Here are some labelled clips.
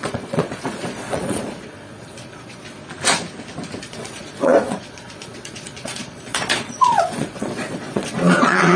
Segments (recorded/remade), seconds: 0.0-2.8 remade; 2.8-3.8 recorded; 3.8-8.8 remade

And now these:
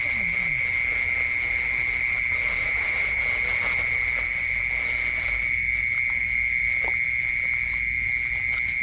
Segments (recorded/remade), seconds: 0.0-2.6 recorded; 2.6-3.2 remade; 3.2-8.8 recorded

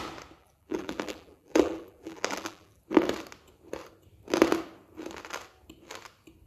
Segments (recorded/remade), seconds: 0.0-0.4 recorded; 0.4-2.8 remade; 2.8-6.5 recorded

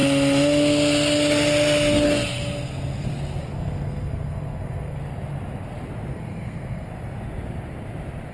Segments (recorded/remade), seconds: 0.0-3.4 recorded; 3.4-5.0 remade; 5.0-6.1 recorded; 6.1-6.9 remade; 6.9-8.3 recorded

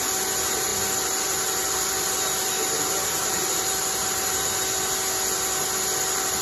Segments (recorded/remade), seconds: 0.0-0.7 recorded; 0.7-4.5 remade; 4.5-6.4 recorded